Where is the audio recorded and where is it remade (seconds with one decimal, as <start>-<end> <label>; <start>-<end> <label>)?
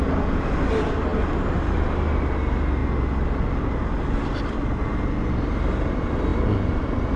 0.0-7.2 recorded